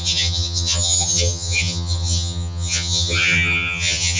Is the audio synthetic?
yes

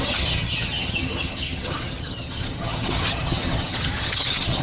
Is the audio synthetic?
yes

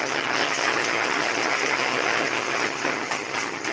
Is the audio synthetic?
yes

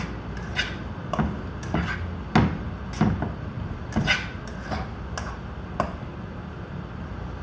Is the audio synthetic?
no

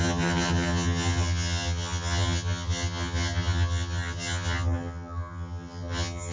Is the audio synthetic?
yes